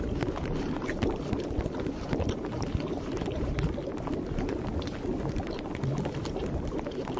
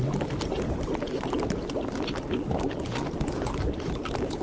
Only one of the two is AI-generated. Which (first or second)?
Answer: first